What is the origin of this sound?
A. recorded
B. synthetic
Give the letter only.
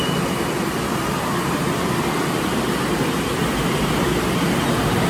A